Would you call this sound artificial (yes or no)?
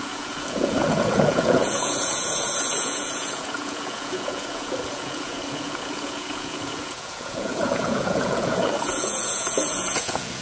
yes